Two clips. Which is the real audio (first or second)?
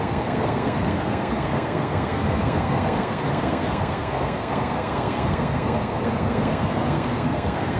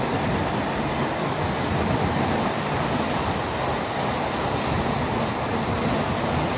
second